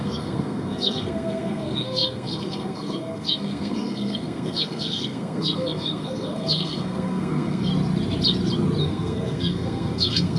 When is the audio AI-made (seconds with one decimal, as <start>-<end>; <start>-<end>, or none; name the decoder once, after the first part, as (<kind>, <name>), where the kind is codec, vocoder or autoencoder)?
0.0-7.7 (codec, SNAC); 8.8-10.4